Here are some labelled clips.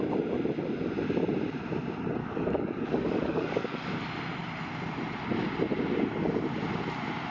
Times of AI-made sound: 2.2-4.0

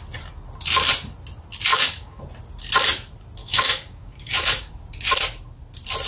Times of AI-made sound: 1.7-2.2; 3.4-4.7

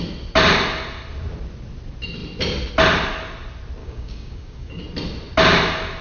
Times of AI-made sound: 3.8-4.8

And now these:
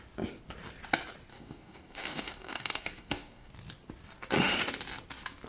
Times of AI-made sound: 1.3-3.5

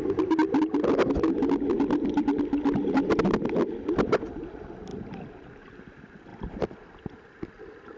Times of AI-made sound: none

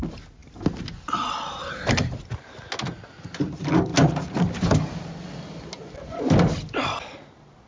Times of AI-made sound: none

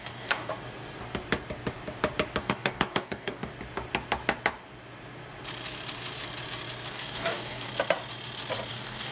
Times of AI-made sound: 0.0-0.5; 2.4-3.5; 6.9-7.7; 8.7-9.1